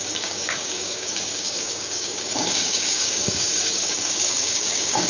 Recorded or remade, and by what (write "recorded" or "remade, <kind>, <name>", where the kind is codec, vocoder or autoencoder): remade, codec, DAC